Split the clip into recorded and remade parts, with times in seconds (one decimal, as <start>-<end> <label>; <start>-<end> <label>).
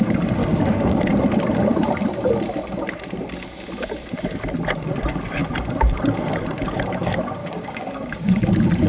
0.0-0.4 recorded; 0.4-1.1 remade; 1.1-7.4 recorded; 7.4-8.5 remade; 8.5-8.9 recorded